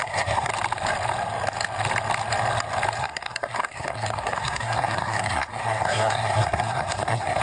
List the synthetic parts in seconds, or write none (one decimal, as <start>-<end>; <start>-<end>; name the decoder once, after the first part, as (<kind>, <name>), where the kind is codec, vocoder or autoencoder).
0.0-0.5 (codec, SNAC); 3.0-7.4